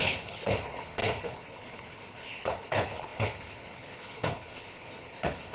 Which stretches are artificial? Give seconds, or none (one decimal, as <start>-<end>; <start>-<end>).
0.0-5.5